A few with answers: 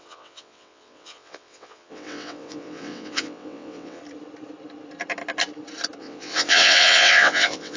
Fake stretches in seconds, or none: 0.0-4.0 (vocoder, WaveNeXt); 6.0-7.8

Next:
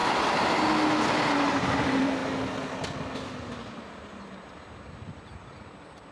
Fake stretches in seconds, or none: 1.4-2.2 (vocoder, BigVGAN v2)

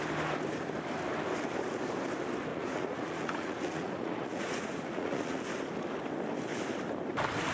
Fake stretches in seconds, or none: 2.5-5.4 (vocoder, Vocos)

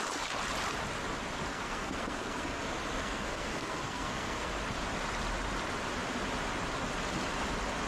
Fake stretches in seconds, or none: 1.5-2.6 (codec, SNAC); 3.0-4.5

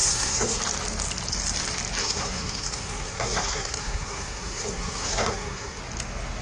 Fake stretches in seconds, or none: 0.0-0.6 (codec, SNAC); 2.0-5.8